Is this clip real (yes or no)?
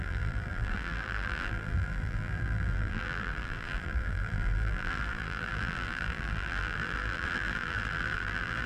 no